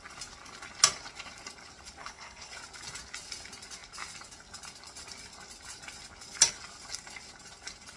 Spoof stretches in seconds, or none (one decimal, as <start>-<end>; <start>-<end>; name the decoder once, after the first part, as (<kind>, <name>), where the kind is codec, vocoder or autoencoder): 2.0-2.5 (codec, HILCodec)